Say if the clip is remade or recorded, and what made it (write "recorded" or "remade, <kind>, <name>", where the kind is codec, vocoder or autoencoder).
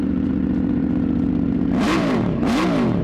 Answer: remade, vocoder, BigVGAN v2